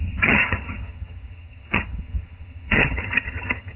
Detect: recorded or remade remade